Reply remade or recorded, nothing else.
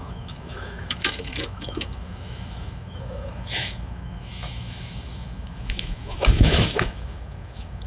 remade